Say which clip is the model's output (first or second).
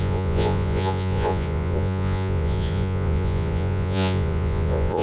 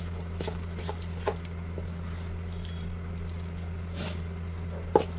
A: first